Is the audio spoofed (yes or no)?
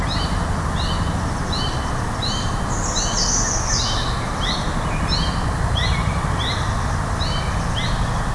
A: no